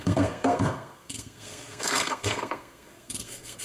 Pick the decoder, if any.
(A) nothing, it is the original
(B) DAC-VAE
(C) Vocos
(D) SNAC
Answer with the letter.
D